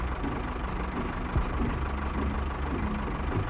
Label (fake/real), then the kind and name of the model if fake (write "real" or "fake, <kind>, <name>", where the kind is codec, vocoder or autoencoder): real